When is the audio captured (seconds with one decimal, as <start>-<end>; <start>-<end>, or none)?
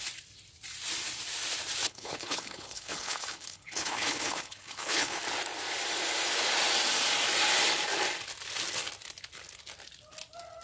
0.0-1.9; 5.2-10.6